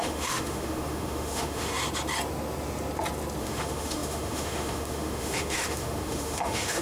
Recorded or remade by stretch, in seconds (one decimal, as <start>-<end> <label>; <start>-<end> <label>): 0.0-1.7 remade; 1.7-3.4 recorded; 3.4-6.8 remade